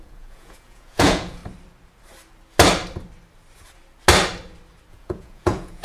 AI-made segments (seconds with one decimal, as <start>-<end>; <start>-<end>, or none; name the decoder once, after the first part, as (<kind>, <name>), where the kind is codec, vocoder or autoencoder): 0.0-1.4 (vocoder, Vocos); 4.9-5.8